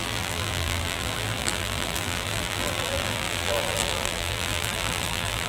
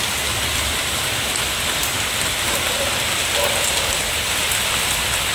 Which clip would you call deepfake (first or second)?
first